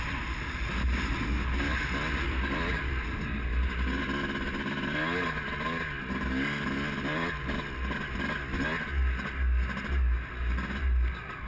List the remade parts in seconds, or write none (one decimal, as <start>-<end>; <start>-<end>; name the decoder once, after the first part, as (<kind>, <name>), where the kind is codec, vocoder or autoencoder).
none